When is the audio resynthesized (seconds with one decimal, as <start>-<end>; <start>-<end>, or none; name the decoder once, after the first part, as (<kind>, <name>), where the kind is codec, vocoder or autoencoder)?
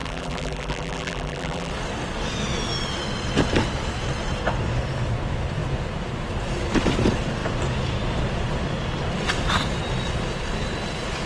0.0-1.7 (vocoder, BigVGAN v2)